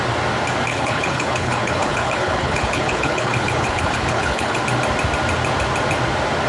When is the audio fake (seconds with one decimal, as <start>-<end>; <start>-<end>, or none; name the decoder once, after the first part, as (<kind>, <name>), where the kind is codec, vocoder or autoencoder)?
0.7-4.6 (codec, HILCodec)